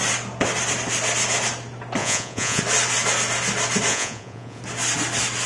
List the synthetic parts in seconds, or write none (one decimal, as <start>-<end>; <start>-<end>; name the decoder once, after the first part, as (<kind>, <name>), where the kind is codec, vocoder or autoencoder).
2.0-2.6 (vocoder, Vocos); 3.9-4.6